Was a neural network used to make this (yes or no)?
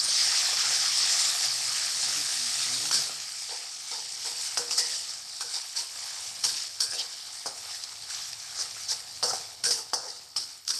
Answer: yes